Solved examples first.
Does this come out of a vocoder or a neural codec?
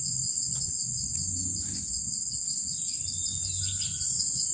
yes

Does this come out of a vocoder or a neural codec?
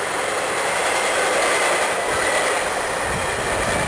no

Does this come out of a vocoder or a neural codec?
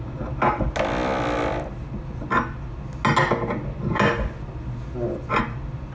no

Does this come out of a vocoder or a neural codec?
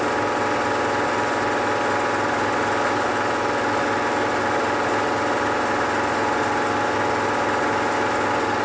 no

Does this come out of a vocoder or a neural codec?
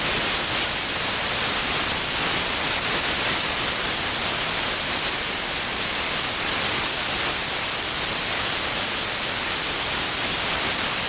no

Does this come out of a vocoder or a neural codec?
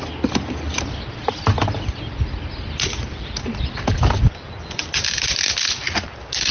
no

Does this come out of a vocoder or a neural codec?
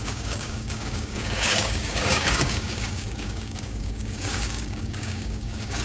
yes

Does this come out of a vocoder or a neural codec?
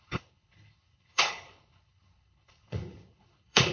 yes